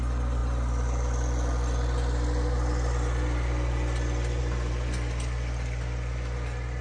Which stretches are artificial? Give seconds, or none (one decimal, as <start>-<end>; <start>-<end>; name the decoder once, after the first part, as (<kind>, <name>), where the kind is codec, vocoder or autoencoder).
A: none